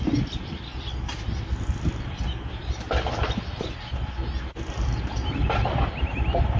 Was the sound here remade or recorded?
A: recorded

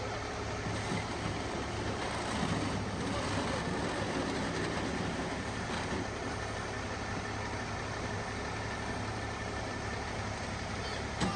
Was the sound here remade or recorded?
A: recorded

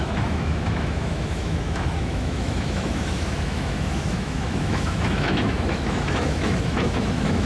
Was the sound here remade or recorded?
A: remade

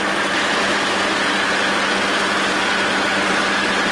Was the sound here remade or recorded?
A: recorded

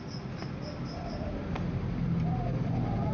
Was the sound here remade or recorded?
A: recorded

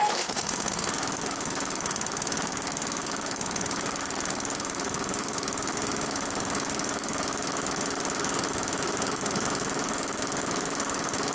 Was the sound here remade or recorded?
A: remade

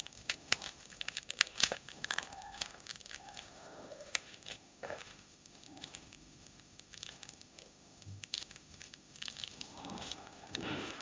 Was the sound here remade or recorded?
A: remade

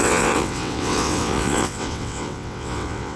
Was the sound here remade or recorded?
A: remade